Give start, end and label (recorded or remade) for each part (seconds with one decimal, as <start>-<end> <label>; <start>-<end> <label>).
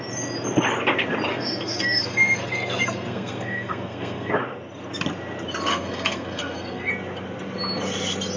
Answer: 0.0-1.3 recorded; 1.3-4.3 remade; 4.3-5.7 recorded; 5.7-6.9 remade; 6.9-8.4 recorded